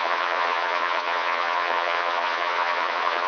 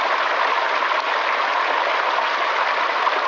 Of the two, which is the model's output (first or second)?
first